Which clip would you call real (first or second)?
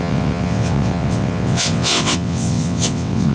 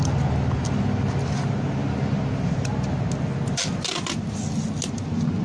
second